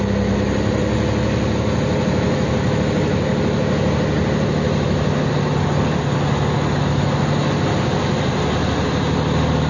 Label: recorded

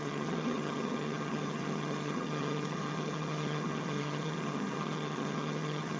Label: remade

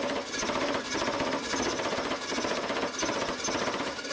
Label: recorded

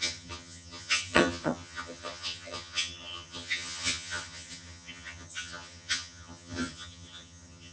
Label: remade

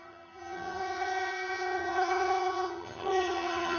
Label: remade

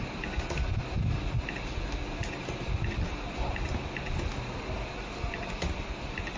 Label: recorded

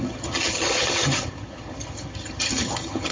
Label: remade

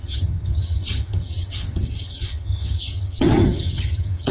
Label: remade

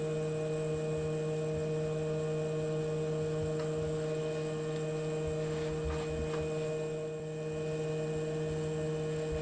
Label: recorded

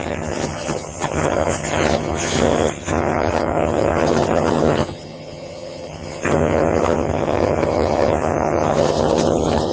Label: remade